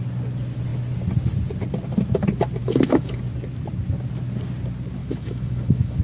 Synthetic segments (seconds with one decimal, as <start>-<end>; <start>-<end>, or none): 2.6-3.2; 5.0-6.0